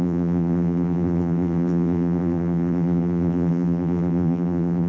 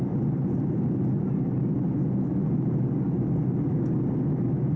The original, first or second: second